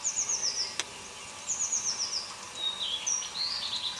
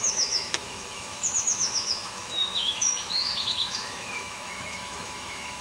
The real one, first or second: first